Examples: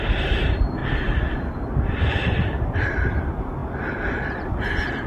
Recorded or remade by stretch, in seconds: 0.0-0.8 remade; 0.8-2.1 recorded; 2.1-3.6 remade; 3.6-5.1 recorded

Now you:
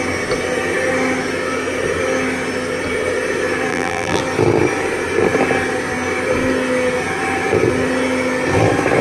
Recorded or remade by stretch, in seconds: 0.0-3.7 recorded; 3.7-4.2 remade; 4.2-9.0 recorded

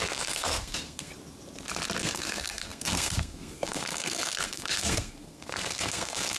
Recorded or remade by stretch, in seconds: 0.0-1.1 remade; 1.1-2.0 recorded; 2.0-6.4 remade

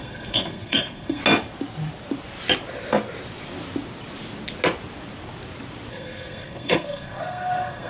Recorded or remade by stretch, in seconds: 0.0-1.2 remade; 1.2-5.9 recorded; 5.9-7.9 remade

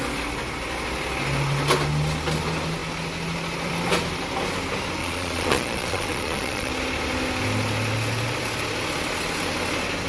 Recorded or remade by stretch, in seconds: 0.0-5.0 recorded; 5.0-6.7 remade; 6.7-10.1 recorded

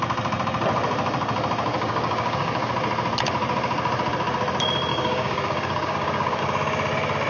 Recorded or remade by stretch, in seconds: 0.0-1.7 recorded; 1.7-2.7 remade; 2.7-4.9 recorded; 4.9-6.4 remade; 6.4-7.3 recorded

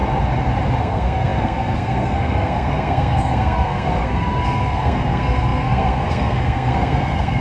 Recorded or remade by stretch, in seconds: 0.0-0.8 recorded; 0.8-7.4 remade